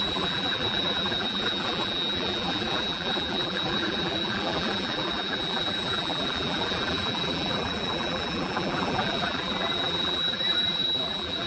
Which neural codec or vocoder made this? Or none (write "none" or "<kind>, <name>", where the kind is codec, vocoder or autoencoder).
vocoder, BigVGAN v2